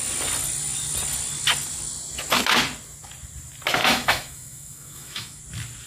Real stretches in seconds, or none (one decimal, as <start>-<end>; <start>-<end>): 0.0-3.8; 5.4-5.9